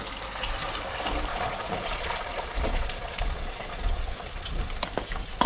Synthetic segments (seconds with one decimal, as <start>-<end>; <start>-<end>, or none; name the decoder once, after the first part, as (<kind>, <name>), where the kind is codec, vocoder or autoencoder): 1.3-4.6 (vocoder, Vocos)